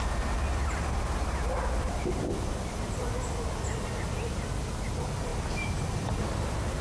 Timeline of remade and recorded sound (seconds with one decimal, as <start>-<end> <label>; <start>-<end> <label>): 0.0-6.8 recorded